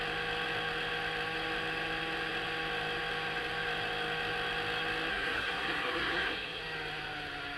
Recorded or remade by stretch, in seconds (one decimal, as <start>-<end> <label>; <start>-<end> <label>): 0.0-5.1 recorded; 5.1-6.6 remade; 6.6-7.6 recorded